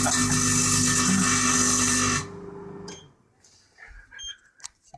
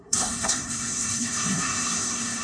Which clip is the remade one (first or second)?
second